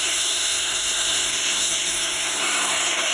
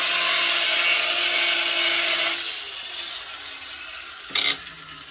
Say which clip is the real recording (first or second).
second